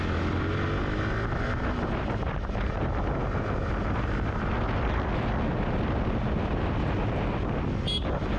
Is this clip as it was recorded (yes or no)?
yes